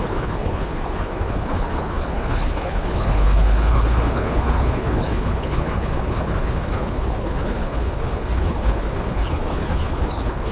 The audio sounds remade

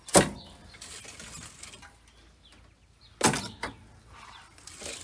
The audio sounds recorded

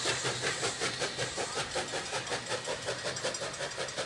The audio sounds recorded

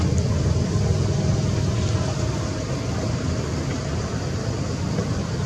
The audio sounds recorded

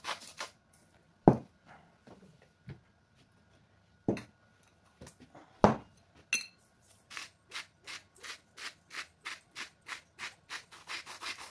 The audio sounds recorded